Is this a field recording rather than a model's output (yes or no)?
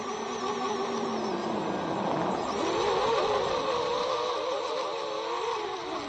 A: yes